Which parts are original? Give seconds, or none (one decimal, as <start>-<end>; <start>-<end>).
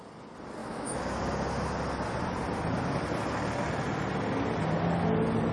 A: 0.0-0.6; 1.2-5.5